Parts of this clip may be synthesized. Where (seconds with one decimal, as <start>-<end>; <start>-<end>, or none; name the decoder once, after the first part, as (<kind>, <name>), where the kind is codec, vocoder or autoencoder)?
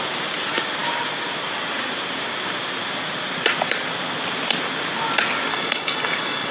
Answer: 5.5-6.5 (codec, DAC)